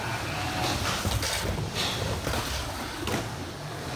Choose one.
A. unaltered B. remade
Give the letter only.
A